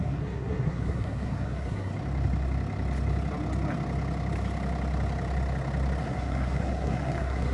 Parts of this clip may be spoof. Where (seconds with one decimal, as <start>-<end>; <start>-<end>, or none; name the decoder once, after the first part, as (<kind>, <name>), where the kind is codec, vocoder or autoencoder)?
0.0-1.9 (codec, SNAC); 6.0-7.5